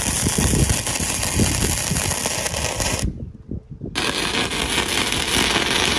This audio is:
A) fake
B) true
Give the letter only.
B